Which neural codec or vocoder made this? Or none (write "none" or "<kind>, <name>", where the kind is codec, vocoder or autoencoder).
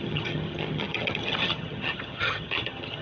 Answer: vocoder, HiFi-GAN